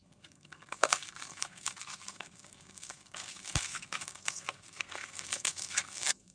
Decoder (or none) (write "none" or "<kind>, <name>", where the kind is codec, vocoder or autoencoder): codec, SNAC